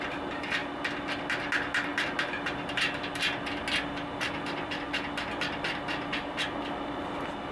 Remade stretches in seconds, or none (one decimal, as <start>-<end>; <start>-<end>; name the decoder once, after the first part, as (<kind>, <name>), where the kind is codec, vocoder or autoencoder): none